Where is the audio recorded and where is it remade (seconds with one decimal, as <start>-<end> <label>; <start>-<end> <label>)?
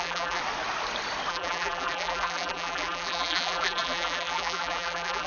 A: 0.0-0.4 remade; 0.4-1.3 recorded; 1.3-5.3 remade